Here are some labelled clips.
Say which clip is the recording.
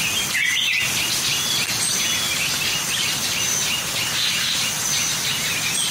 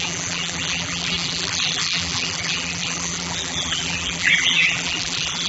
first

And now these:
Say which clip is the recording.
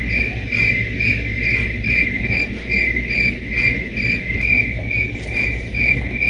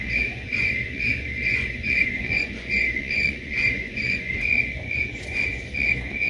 first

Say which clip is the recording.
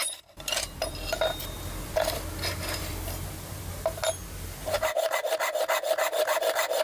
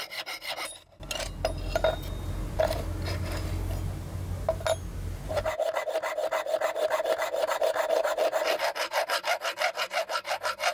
second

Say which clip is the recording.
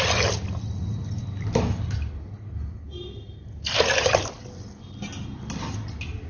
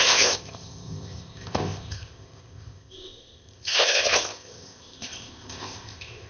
first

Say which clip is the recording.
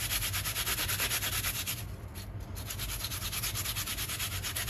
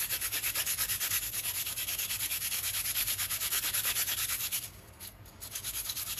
first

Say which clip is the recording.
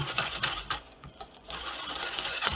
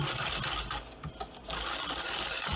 second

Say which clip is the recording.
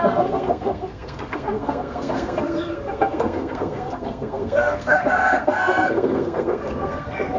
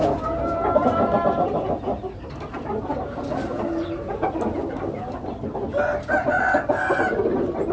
second